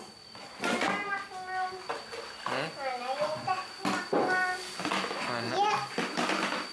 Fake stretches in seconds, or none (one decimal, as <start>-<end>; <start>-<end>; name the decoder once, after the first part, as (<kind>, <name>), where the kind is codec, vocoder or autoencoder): none